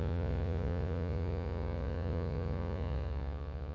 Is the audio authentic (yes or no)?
no